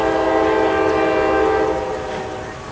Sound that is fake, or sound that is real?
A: real